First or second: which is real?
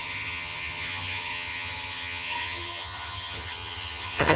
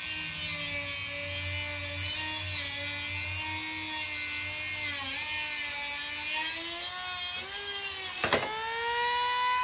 second